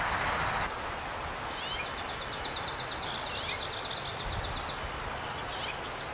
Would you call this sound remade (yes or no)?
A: no